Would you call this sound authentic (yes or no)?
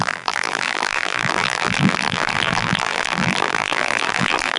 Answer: no